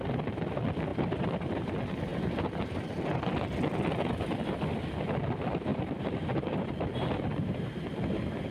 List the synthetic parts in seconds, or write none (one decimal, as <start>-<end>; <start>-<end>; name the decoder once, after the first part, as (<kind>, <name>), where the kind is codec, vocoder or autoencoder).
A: 0.9-1.7 (vocoder, BigVGAN v2); 2.1-3.2; 5.7-7.8